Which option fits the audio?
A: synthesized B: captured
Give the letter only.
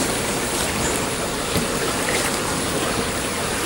B